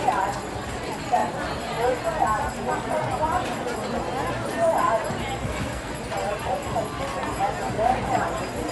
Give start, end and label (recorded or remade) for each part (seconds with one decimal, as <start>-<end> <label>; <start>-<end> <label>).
0.0-5.4 recorded; 5.4-5.9 remade; 5.9-8.7 recorded